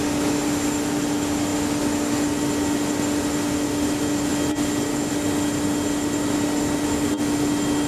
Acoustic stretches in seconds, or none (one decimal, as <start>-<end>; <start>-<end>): 0.0-7.9